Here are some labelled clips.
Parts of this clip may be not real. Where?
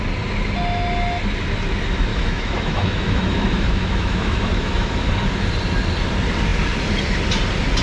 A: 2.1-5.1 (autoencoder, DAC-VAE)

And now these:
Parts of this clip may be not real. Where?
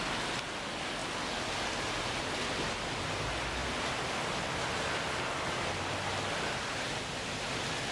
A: none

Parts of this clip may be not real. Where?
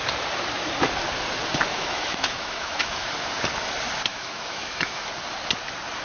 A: 1.7-3.1 (autoencoder, DAC-VAE); 4.1-5.1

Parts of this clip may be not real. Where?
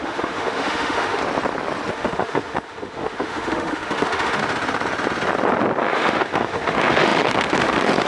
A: 0.0-1.2 (autoencoder, DAC-VAE); 1.9-4.4; 5.8-8.1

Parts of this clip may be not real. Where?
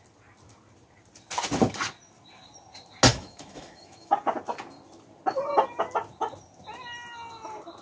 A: 3.1-4.1 (autoencoder, DAC-VAE)